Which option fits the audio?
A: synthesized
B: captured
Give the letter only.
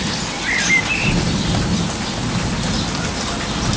B